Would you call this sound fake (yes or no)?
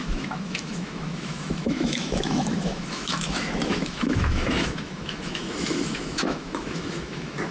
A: yes